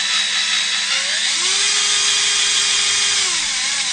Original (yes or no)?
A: yes